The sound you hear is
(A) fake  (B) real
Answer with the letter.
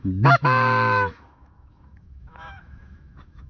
A